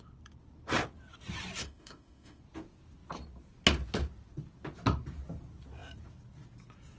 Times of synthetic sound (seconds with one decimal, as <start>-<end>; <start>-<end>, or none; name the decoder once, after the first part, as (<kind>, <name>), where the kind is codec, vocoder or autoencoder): 1.6-2.4 (autoencoder, DAC-VAE)